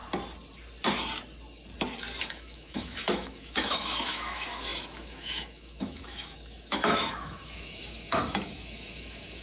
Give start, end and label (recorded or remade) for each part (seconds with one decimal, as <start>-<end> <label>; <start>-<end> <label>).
0.0-2.2 recorded; 2.2-9.4 remade